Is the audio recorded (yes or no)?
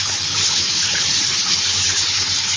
no